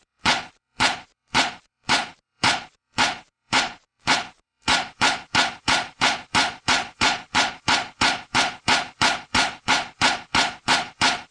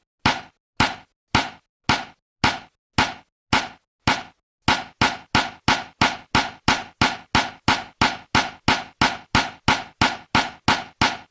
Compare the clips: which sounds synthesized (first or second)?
first